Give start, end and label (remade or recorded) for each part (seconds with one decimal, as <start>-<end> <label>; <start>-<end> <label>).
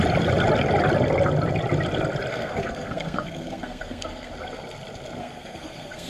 0.0-2.3 recorded; 2.3-4.3 remade; 4.3-5.2 recorded; 5.2-6.1 remade